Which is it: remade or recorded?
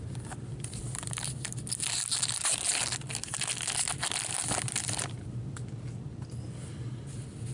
recorded